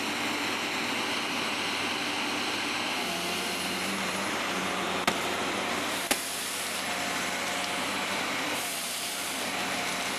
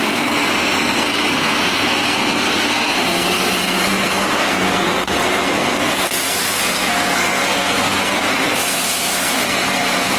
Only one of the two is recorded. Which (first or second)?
first